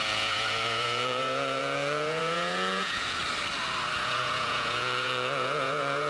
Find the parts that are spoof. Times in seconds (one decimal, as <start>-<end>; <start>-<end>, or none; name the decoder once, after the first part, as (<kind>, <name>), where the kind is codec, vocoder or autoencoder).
0.0-3.2 (vocoder, Vocos); 4.0-6.1